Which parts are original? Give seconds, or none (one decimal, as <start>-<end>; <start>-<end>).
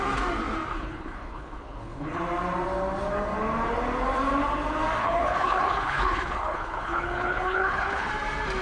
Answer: 0.0-0.7; 2.2-5.0; 8.1-8.6